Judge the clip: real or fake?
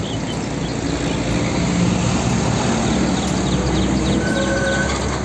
real